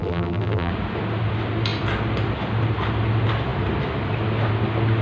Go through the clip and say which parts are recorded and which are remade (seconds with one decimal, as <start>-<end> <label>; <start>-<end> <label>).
0.0-0.7 remade; 0.7-5.0 recorded